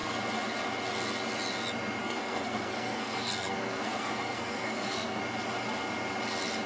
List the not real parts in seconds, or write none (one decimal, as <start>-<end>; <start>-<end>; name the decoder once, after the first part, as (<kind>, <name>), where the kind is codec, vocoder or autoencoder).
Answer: 2.0-5.2 (codec, SNAC)